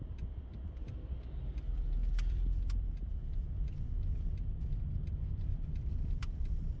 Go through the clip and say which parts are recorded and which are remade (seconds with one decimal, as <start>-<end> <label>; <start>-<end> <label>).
0.0-3.2 remade; 3.2-5.3 recorded; 5.3-6.8 remade